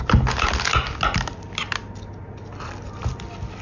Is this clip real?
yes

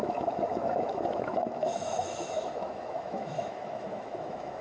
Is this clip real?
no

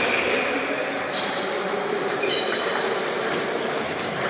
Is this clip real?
no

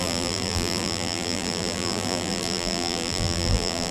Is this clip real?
no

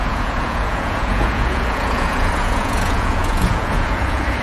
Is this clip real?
no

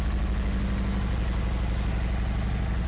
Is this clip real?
yes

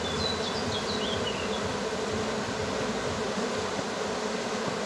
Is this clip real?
yes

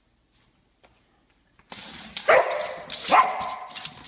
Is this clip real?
yes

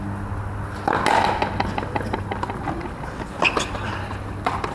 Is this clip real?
yes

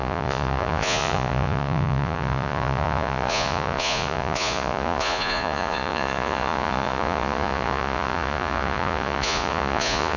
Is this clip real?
no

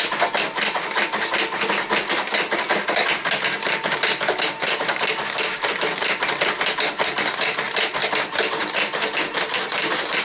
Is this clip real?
yes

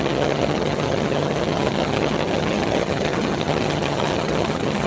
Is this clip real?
no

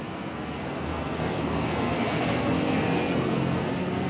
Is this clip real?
no